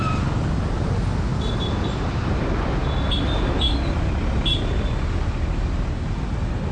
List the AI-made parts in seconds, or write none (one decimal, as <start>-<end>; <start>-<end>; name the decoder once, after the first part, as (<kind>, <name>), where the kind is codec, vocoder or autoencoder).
1.3-2.4 (vocoder, BigVGAN v2)